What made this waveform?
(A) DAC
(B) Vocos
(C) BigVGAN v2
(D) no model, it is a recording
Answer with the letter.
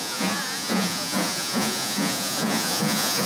B